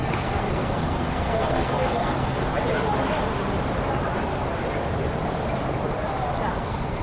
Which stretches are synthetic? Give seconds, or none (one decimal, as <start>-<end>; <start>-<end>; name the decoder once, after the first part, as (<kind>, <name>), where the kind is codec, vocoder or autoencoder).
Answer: 0.0-2.5 (codec, SNAC); 6.5-7.0